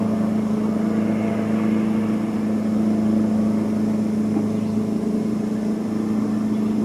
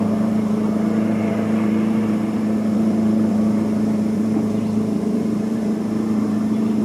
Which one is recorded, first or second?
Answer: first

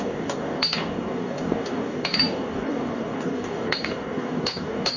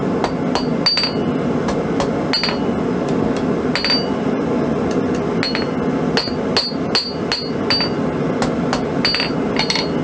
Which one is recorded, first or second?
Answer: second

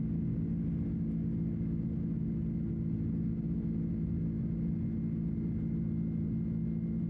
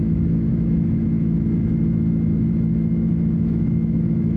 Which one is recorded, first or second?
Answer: first